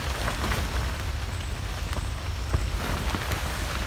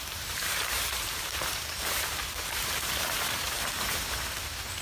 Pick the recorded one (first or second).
first